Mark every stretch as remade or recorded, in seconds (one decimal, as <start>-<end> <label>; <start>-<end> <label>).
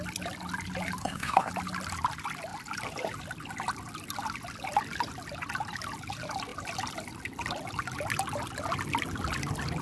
0.0-1.0 recorded; 1.0-1.5 remade; 1.5-9.8 recorded